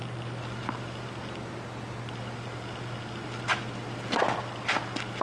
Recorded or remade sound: recorded